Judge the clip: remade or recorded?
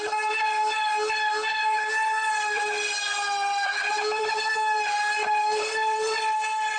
recorded